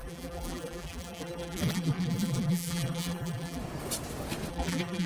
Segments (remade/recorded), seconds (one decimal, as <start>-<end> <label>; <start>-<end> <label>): 0.0-3.6 remade; 3.6-4.5 recorded; 4.5-5.1 remade